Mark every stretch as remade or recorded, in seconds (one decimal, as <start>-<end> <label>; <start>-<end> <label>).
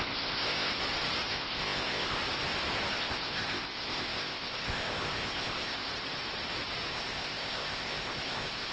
0.0-0.7 remade; 0.7-1.3 recorded; 1.3-2.2 remade; 2.2-2.9 recorded; 2.9-5.9 remade; 5.9-6.9 recorded; 6.9-8.7 remade